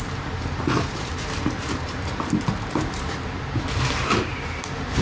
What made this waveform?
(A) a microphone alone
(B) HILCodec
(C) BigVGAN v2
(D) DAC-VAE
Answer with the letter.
C